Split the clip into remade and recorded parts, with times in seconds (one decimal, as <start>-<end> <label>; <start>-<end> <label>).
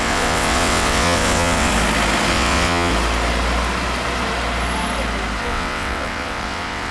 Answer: 0.0-1.7 remade; 1.7-2.3 recorded; 2.3-2.9 remade; 2.9-5.4 recorded; 5.4-6.9 remade